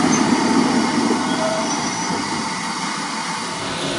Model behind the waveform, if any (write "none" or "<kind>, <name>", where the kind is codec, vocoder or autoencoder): none